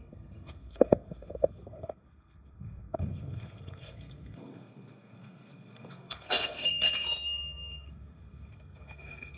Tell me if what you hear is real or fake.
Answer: fake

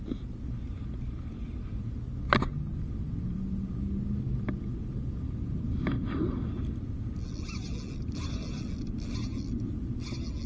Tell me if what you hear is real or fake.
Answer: real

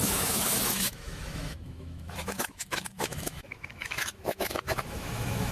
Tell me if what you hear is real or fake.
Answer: fake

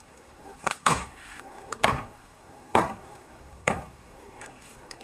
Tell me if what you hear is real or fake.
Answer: fake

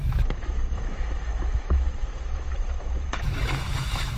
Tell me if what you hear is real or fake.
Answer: fake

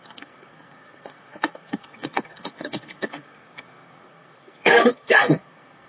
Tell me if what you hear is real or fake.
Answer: fake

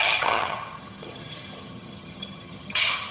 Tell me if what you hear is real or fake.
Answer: fake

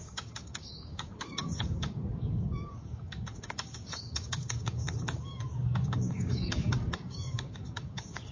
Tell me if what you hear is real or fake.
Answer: fake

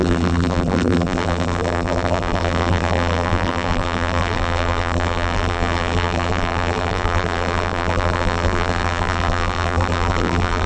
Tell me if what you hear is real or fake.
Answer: fake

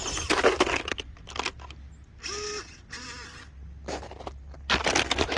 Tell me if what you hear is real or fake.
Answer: real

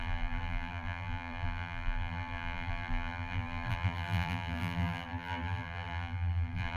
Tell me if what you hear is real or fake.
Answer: fake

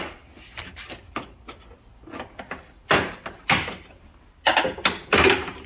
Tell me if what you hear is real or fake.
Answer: fake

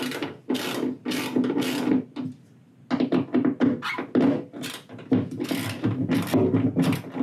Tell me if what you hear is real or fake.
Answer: real